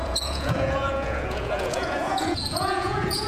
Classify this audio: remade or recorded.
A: remade